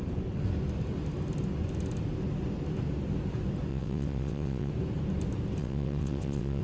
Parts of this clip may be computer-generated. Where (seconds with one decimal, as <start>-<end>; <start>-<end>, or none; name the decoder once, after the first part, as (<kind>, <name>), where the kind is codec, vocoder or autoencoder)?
3.7-4.7 (vocoder, WaveNeXt); 5.6-6.6